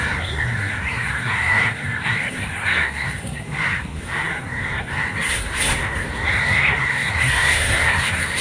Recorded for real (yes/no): no